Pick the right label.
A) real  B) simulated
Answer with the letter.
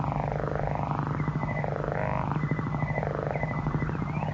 A